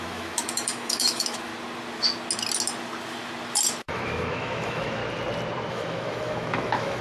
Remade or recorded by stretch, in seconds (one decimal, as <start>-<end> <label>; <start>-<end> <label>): 0.0-1.5 remade; 1.5-3.8 recorded; 3.8-5.0 remade; 5.0-5.7 recorded; 5.7-7.0 remade